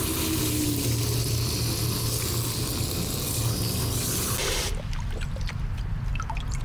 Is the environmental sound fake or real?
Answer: real